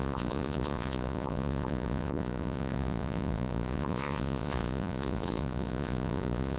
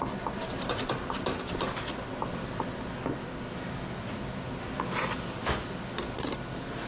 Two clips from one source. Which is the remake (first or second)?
first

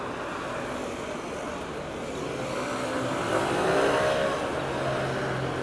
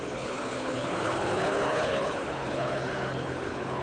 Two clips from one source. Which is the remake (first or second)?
second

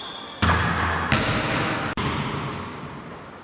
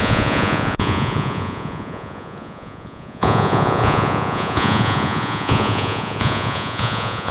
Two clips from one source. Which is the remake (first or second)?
second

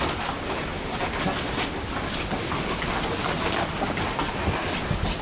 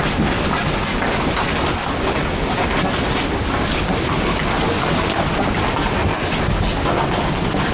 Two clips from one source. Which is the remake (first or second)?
first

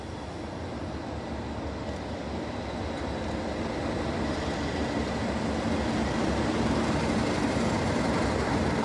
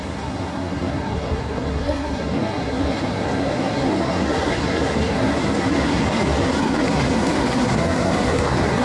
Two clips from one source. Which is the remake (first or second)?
second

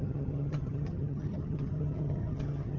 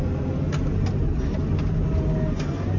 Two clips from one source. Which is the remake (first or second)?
first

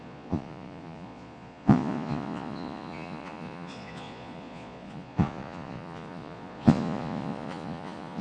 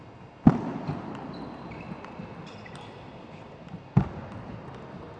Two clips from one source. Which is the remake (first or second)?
first